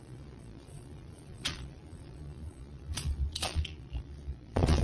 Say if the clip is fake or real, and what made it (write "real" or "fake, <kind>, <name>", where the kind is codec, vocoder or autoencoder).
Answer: fake, vocoder, Vocos